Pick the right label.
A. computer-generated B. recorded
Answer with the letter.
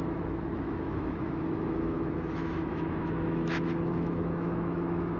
A